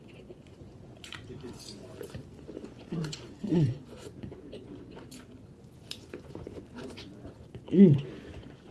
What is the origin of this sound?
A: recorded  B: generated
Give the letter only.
B